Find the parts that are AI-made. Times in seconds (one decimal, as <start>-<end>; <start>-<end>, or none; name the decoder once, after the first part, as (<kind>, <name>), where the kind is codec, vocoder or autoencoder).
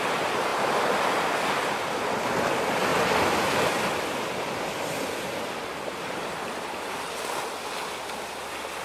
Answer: none